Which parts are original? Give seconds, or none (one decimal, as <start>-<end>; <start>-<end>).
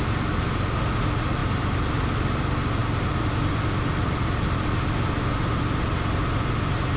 0.0-7.0